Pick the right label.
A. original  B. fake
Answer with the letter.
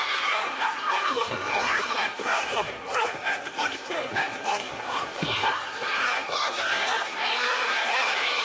B